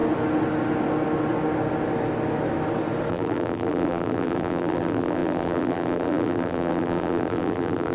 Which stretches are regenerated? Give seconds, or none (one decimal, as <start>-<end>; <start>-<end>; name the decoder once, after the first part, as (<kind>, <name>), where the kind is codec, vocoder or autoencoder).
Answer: 3.1-7.9 (vocoder, BigVGAN v2)